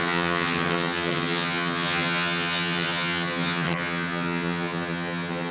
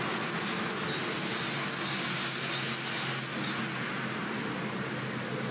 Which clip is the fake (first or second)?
first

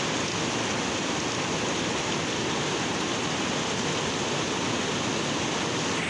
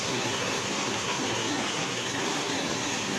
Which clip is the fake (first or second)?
second